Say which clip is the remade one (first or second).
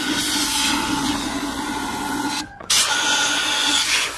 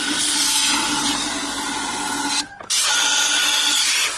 first